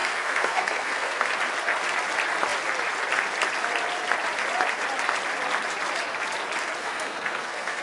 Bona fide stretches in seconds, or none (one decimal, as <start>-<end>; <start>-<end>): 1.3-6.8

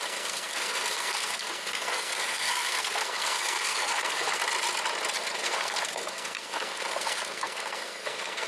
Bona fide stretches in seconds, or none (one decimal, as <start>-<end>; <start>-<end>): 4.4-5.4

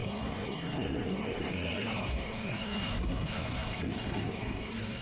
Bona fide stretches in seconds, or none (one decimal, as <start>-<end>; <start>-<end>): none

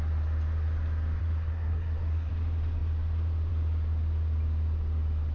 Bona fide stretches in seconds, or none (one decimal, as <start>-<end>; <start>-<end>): 0.0-1.2; 2.3-5.3

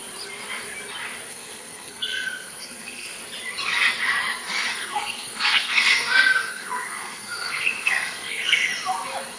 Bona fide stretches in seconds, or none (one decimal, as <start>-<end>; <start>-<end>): 0.0-1.3; 3.2-4.7; 8.7-9.4